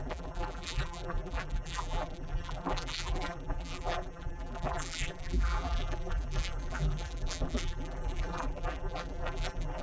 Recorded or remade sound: remade